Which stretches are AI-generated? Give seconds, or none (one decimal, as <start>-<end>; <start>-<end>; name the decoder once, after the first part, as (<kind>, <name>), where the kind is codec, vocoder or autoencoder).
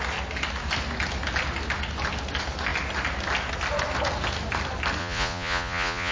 5.0-6.1 (vocoder, Vocos)